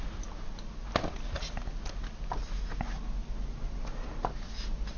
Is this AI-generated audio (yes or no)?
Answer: no